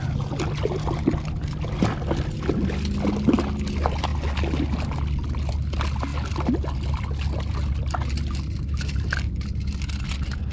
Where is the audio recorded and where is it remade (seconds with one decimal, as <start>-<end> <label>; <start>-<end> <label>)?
0.0-10.5 recorded